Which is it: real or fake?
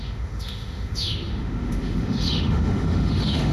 fake